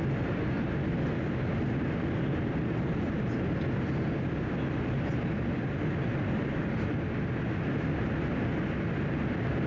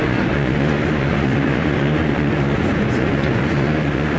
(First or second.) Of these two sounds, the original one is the first